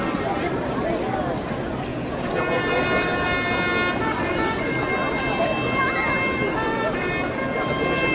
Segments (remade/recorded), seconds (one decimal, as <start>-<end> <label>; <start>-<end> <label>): 0.0-1.9 recorded; 1.9-2.6 remade; 2.6-8.1 recorded